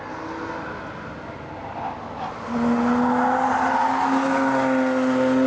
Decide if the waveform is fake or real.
real